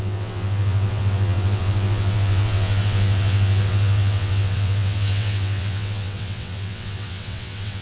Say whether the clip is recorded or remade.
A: remade